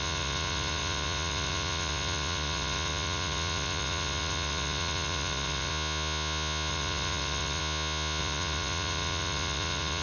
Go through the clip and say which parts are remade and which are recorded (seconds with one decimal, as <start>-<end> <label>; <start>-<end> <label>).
0.0-5.7 remade; 5.7-6.7 recorded; 6.7-7.6 remade; 7.6-8.2 recorded; 8.2-10.0 remade